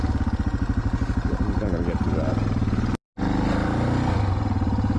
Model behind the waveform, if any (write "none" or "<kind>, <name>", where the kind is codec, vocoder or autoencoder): none